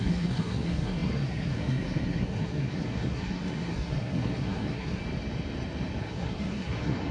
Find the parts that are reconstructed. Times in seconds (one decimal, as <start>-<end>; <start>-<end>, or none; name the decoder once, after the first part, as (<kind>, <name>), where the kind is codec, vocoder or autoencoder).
0.0-5.0 (codec, SNAC); 6.0-7.1